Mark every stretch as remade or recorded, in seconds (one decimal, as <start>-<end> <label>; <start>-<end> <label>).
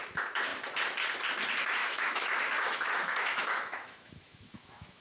0.0-1.8 recorded; 1.8-5.0 remade